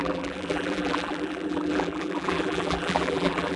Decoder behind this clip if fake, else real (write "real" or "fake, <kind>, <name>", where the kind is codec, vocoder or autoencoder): fake, vocoder, BigVGAN v2